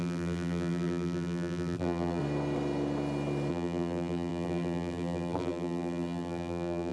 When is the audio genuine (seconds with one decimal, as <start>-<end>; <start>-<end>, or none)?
2.2-3.5